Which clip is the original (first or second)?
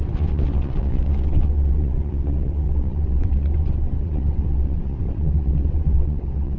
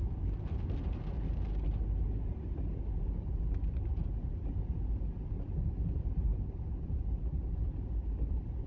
second